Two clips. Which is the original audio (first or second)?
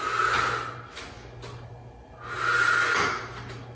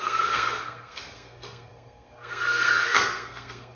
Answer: first